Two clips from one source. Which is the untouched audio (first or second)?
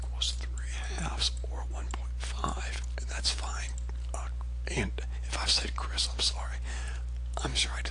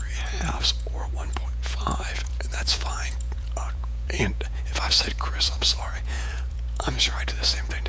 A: first